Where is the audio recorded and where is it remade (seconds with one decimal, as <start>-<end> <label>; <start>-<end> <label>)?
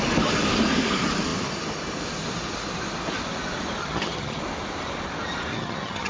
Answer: 0.0-3.8 recorded; 3.8-4.4 remade; 4.4-5.5 recorded; 5.5-6.1 remade